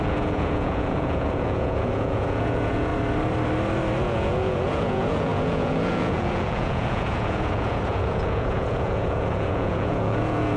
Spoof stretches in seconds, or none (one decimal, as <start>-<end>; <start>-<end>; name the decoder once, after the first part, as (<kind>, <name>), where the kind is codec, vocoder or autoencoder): 0.0-2.9 (vocoder, Vocos); 4.0-10.6